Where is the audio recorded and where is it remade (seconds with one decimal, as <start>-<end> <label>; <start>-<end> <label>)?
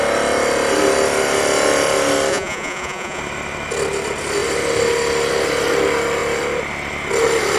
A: 0.0-2.3 recorded; 2.3-3.2 remade; 3.2-7.6 recorded